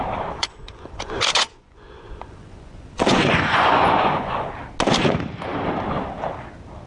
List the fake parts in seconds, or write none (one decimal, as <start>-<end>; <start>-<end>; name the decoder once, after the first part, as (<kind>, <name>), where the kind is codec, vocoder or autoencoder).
0.4-4.5 (vocoder, Vocos)